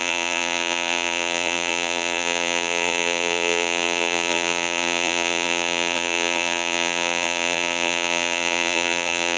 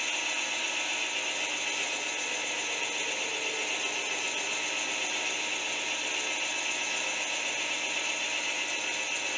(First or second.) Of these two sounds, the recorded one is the second